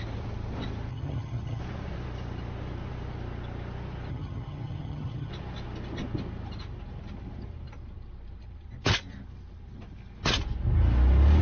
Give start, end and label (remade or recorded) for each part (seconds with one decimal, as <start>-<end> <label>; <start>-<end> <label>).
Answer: 0.0-0.9 recorded; 0.9-1.6 remade; 1.6-4.1 recorded; 4.1-5.3 remade; 5.3-11.4 recorded